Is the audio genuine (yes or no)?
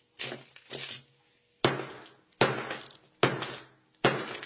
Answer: yes